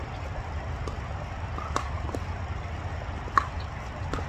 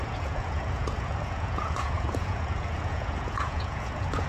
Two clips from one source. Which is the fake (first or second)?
second